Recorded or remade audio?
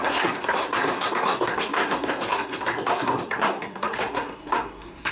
remade